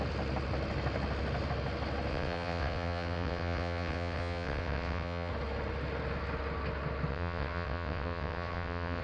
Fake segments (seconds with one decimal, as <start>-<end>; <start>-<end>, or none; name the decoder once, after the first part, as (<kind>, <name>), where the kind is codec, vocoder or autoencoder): 2.1-5.3 (vocoder, WaveNeXt); 7.1-9.0